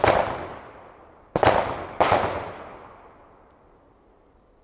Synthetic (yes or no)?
no